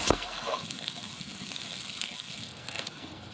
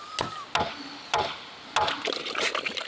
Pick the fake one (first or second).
first